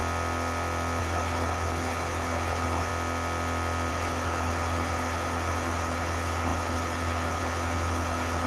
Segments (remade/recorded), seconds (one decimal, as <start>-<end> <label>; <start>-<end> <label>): 0.0-1.0 recorded; 1.0-2.9 remade; 2.9-3.9 recorded; 3.9-8.5 remade